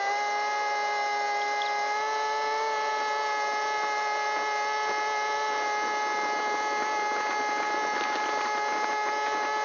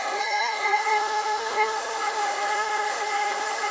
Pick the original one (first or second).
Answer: first